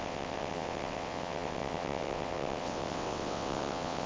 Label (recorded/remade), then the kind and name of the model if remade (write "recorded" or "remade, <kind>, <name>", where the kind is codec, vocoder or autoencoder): remade, vocoder, WaveNeXt